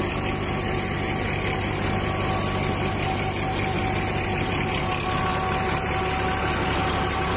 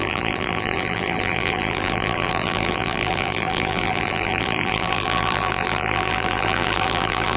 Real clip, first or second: first